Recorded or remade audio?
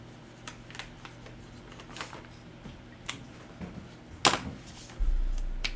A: recorded